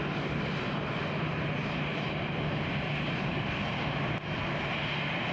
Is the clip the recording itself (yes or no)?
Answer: yes